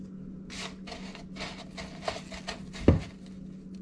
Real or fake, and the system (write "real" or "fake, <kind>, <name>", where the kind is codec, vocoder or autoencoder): real